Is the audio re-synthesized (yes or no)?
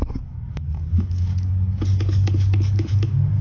yes